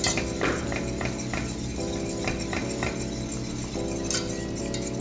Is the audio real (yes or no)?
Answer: yes